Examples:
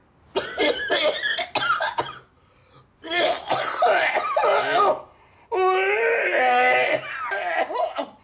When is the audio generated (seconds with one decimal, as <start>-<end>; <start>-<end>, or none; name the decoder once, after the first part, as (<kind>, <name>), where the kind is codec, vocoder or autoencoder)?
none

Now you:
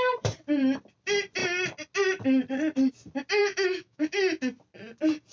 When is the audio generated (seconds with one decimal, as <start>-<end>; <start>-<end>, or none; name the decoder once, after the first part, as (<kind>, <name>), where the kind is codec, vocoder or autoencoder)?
3.4-4.2 (autoencoder, DAC-VAE)

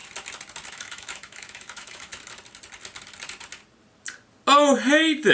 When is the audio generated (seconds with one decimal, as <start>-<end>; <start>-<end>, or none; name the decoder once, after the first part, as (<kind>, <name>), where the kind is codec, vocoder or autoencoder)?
0.7-2.1 (autoencoder, DAC-VAE)

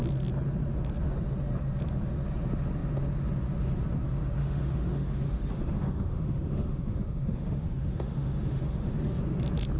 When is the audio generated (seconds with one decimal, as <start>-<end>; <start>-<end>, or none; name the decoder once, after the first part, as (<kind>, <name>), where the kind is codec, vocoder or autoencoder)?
4.4-9.2 (autoencoder, DAC-VAE)

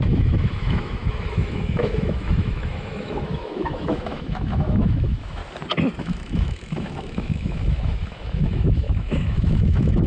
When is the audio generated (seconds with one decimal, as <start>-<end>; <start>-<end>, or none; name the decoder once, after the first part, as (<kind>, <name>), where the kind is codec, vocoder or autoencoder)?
0.0-5.4 (autoencoder, DAC-VAE); 6.0-10.1